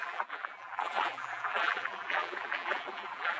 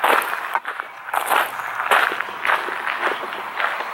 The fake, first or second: first